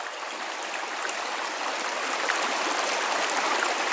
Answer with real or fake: real